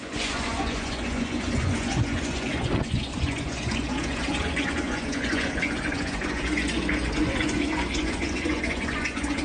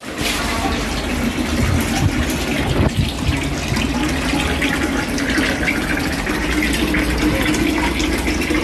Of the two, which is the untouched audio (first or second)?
second